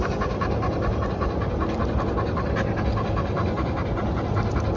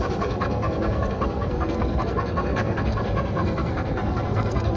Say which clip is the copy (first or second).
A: second